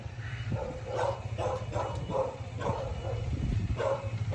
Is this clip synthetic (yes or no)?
yes